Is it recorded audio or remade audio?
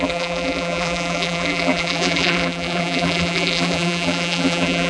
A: remade